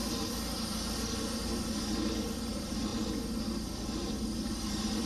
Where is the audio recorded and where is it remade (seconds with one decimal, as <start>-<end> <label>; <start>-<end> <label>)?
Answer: 0.0-2.5 recorded; 2.5-2.9 remade; 2.9-4.2 recorded; 4.2-5.1 remade